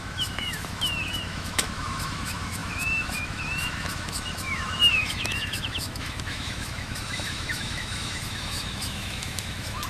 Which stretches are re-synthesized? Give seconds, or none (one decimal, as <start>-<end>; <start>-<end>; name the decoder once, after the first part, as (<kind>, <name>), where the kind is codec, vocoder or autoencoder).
0.0-9.9 (autoencoder, DAC-VAE)